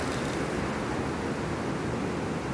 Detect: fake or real real